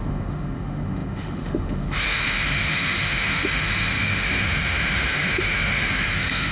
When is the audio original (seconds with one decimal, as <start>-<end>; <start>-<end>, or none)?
none

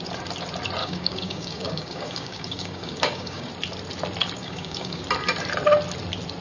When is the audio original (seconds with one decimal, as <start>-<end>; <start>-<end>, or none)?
0.0-0.8; 3.5-4.4; 5.0-6.4

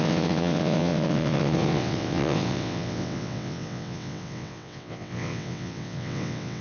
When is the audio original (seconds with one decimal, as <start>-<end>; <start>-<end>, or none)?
none

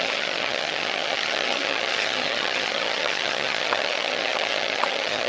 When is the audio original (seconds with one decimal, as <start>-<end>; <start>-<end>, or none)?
none

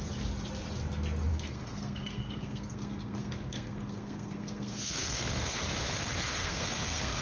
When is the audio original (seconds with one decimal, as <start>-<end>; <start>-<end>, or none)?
0.0-1.3; 5.6-6.4

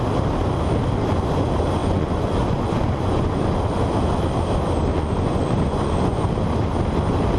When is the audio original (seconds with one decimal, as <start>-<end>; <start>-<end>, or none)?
0.0-1.8; 3.5-4.9; 6.3-7.4

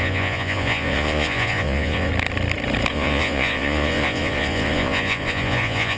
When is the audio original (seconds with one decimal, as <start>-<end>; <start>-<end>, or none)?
2.1-2.9